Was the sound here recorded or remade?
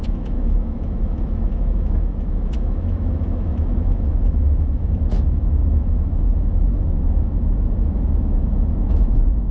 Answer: remade